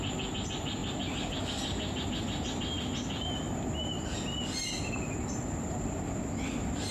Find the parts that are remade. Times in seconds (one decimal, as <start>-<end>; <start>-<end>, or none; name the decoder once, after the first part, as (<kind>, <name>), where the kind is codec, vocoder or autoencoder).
none